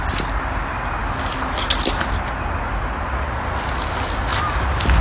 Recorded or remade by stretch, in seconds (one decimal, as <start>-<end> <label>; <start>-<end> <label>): 0.0-5.0 recorded